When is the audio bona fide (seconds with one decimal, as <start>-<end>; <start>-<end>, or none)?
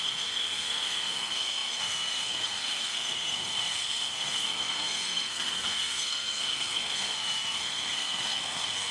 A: none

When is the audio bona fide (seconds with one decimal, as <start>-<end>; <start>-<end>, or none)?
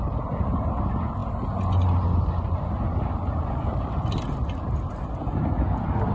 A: 0.0-6.1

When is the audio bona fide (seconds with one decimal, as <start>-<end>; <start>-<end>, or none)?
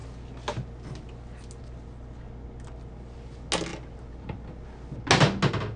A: 0.0-5.8